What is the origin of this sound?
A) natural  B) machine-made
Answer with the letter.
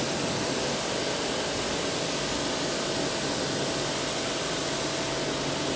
A